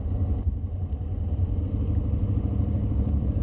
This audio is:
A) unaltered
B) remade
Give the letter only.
A